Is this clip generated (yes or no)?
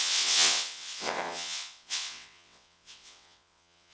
yes